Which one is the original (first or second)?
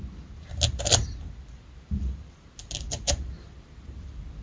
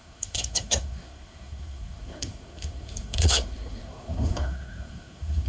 first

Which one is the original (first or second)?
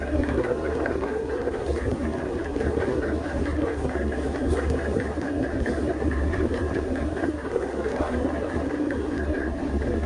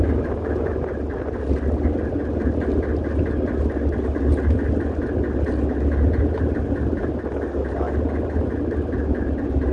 second